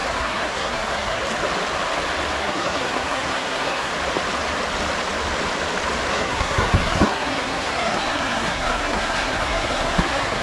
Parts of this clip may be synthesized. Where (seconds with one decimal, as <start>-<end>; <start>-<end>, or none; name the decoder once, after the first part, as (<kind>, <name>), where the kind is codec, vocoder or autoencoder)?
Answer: 0.0-1.2 (codec, SNAC); 2.4-3.9; 6.1-10.4